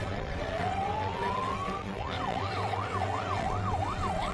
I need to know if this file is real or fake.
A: fake